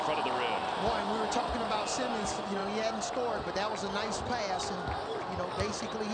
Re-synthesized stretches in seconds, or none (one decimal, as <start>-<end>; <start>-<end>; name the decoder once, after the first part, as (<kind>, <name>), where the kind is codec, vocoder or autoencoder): none